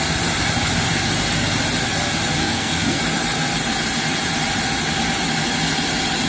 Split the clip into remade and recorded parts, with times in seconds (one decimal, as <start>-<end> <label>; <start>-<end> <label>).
0.0-2.4 recorded; 2.4-3.0 remade; 3.0-6.3 recorded